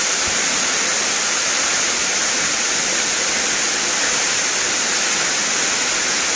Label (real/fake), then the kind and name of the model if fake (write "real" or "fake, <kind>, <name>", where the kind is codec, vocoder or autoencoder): real